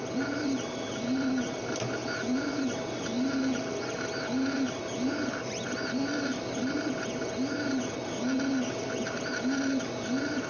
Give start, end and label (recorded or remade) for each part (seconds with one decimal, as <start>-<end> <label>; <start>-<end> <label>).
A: 0.0-10.5 recorded

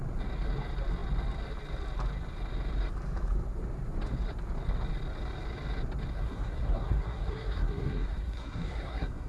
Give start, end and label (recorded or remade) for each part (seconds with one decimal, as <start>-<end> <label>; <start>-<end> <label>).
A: 0.0-6.1 recorded; 6.1-9.3 remade

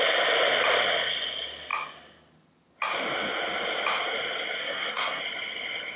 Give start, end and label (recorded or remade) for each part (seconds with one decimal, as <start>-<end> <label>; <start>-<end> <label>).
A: 0.0-4.6 recorded; 4.6-5.2 remade; 5.2-6.0 recorded

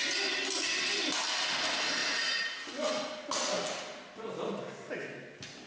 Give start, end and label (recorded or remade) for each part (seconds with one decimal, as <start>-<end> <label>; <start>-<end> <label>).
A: 0.0-5.7 recorded

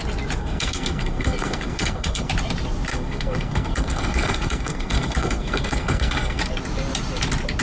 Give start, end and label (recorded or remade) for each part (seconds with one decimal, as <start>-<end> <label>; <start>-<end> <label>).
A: 0.0-0.4 recorded; 0.4-2.3 remade; 2.3-2.9 recorded; 2.9-6.4 remade; 6.4-7.6 recorded

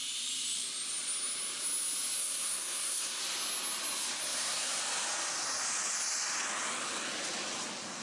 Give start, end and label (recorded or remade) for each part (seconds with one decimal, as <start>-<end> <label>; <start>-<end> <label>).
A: 0.0-2.2 recorded; 2.2-3.2 remade; 3.2-4.2 recorded; 4.2-4.8 remade; 4.8-8.0 recorded

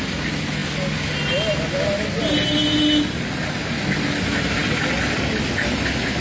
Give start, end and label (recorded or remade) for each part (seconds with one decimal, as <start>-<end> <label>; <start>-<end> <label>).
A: 0.0-6.2 recorded

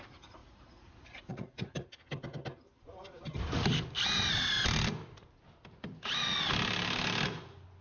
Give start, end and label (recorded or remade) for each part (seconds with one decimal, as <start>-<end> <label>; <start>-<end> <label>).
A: 0.0-0.4 recorded; 0.4-1.9 remade; 1.9-7.8 recorded